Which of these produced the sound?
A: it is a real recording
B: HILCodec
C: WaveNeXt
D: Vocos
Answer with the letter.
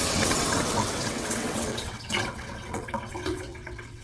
C